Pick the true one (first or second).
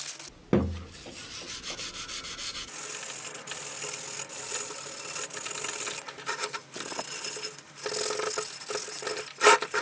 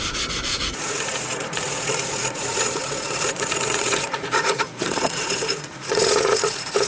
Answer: first